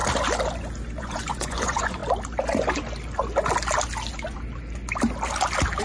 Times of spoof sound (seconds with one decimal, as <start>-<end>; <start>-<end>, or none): 1.0-2.0